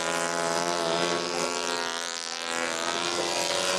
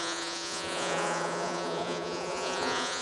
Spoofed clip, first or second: second